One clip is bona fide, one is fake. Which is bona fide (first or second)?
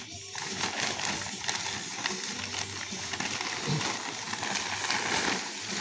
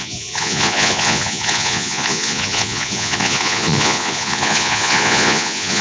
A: first